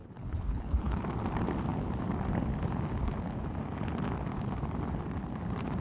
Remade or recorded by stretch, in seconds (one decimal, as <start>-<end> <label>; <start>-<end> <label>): 0.0-1.0 remade; 1.0-5.8 recorded